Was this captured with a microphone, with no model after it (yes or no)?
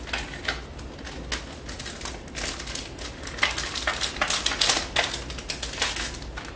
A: yes